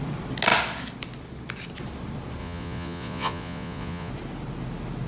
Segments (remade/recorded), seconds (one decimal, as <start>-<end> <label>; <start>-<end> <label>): 0.0-2.4 recorded; 2.4-4.1 remade; 4.1-5.1 recorded